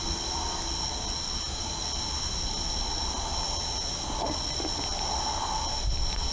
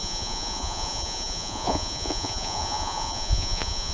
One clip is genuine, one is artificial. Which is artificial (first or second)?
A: second